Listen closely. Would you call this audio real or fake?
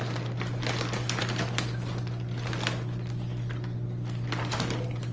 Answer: real